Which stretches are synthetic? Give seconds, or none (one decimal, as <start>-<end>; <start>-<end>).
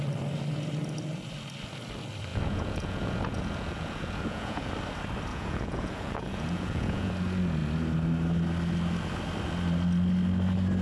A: 2.3-4.7; 5.3-7.1